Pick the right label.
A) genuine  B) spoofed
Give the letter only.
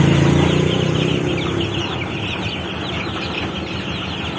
A